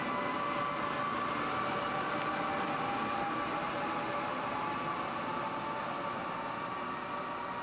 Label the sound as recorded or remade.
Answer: recorded